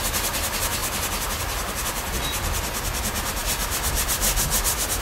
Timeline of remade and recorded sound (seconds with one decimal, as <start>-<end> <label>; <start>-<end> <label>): 0.0-5.0 recorded